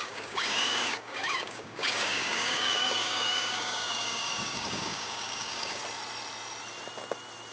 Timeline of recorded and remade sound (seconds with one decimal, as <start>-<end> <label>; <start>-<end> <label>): 0.0-5.8 remade; 5.8-7.5 recorded